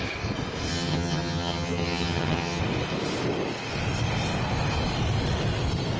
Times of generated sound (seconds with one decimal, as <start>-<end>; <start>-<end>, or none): 0.7-2.6